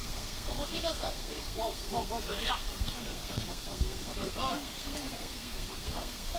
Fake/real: fake